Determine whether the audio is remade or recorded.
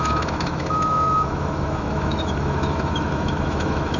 remade